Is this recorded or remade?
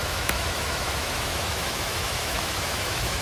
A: remade